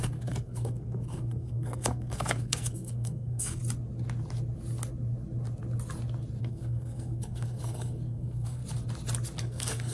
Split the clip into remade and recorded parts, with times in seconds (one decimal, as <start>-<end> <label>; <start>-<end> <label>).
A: 0.0-3.6 remade; 3.6-6.4 recorded; 6.4-8.6 remade; 8.6-9.4 recorded; 9.4-9.9 remade